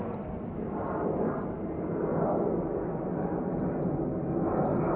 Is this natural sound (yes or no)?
yes